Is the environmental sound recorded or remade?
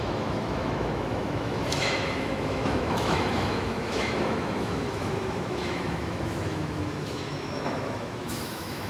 remade